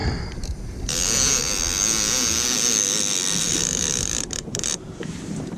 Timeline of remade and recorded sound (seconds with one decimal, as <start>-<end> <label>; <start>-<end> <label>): 0.0-3.4 recorded; 3.4-5.6 remade